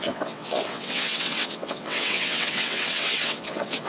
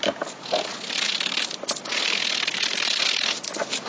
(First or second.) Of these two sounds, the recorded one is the second